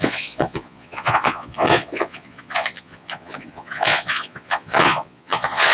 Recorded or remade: remade